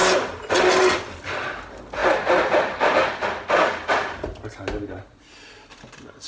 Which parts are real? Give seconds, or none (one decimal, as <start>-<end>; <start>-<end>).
0.0-6.3